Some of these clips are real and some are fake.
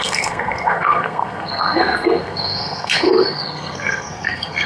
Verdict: fake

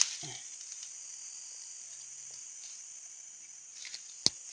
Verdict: real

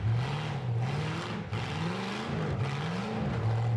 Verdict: real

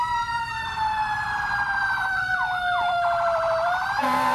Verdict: fake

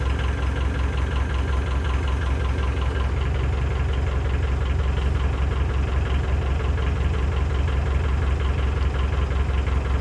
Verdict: real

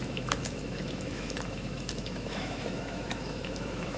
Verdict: fake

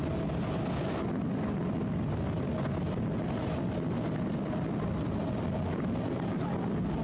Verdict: real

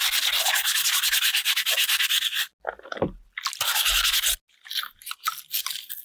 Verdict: real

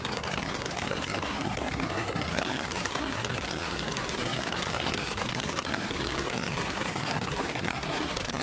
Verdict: fake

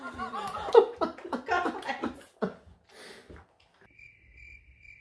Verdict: real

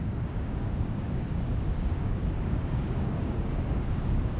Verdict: fake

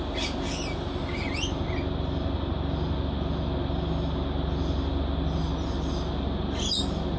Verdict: real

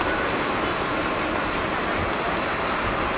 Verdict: real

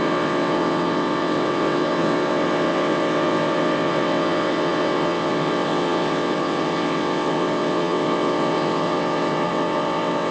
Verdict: fake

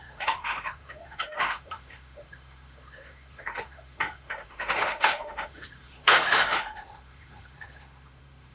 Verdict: fake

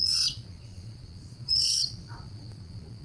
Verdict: fake